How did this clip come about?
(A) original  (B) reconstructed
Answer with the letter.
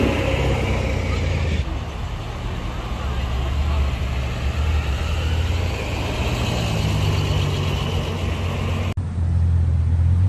A